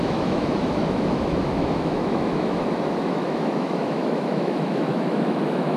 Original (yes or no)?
no